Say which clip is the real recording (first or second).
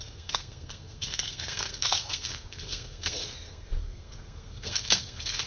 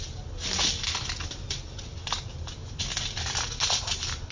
second